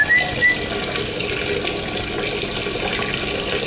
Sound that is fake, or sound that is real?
real